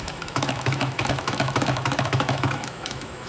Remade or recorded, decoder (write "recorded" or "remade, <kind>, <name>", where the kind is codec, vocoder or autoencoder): remade, autoencoder, DAC-VAE